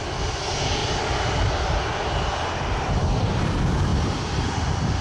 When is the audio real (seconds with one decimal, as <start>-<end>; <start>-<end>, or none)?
0.0-0.8; 3.4-3.9